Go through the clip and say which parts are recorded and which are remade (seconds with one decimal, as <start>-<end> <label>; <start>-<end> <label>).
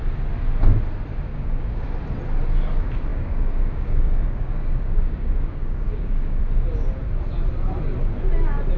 0.0-1.3 recorded; 1.3-1.8 remade; 1.8-3.1 recorded; 3.1-6.4 remade; 6.4-8.8 recorded